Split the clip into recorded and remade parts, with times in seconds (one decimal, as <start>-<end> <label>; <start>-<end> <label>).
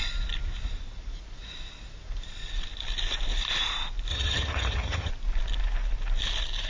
0.0-4.1 recorded; 4.1-5.1 remade; 5.1-6.7 recorded